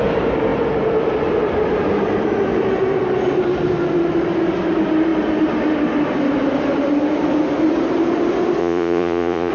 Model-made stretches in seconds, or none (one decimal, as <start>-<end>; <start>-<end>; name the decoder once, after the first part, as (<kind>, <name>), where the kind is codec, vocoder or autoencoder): 8.6-9.5 (vocoder, Vocos)